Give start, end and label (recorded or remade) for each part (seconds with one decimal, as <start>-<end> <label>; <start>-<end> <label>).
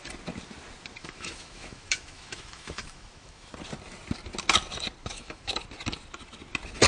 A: 0.0-1.0 recorded; 1.0-3.5 remade; 3.5-5.0 recorded; 5.0-5.5 remade; 5.5-6.9 recorded